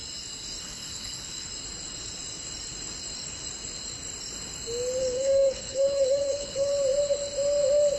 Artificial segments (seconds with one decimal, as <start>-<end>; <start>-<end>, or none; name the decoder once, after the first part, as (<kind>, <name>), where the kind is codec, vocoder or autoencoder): 0.6-1.5 (codec, HILCodec); 5.0-6.7